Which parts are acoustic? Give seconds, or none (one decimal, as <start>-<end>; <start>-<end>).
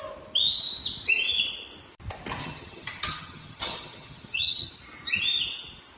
0.0-2.4; 4.7-6.0